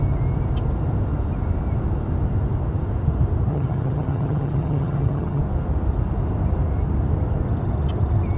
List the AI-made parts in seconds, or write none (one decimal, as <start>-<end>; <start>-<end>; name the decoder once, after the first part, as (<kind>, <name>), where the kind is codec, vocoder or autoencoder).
3.5-5.4 (vocoder, HiFi-GAN)

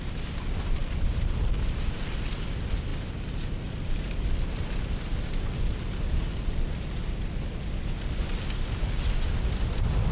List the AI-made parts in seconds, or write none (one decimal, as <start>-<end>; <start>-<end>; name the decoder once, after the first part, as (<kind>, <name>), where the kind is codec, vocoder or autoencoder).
none

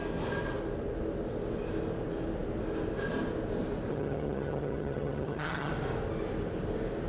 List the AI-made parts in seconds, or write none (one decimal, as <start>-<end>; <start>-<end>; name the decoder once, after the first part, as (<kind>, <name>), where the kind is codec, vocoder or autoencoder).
3.9-5.7 (vocoder, HiFi-GAN)

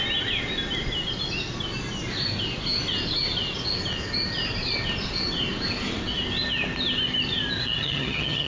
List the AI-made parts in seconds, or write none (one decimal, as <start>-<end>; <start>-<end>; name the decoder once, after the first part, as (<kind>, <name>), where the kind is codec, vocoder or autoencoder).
7.6-8.5 (vocoder, HiFi-GAN)

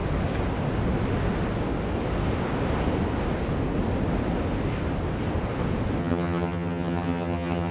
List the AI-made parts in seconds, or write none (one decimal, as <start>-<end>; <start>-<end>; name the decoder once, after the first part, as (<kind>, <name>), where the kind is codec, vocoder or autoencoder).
6.0-7.7 (vocoder, HiFi-GAN)

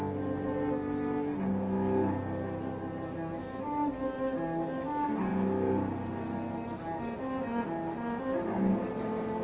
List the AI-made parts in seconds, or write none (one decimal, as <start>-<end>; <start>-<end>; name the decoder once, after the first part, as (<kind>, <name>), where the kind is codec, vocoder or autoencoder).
none

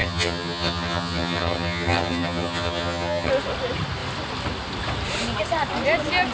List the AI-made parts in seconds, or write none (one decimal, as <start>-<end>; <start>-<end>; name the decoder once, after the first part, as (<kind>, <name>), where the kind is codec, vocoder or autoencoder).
0.0-3.3 (vocoder, HiFi-GAN)

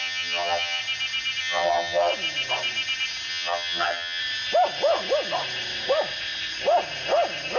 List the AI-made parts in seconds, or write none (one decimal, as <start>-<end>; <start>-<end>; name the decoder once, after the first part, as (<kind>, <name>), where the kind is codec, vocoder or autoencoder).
0.0-0.8 (vocoder, HiFi-GAN); 1.4-2.1; 3.3-4.2